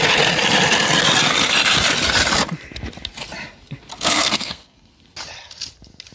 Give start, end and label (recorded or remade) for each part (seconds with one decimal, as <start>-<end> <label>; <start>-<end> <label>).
0.0-3.9 recorded; 3.9-4.9 remade; 4.9-6.1 recorded